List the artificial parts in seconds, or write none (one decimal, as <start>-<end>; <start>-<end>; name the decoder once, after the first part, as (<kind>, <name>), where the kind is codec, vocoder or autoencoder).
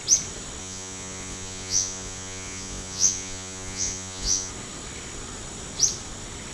0.6-4.5 (vocoder, Vocos)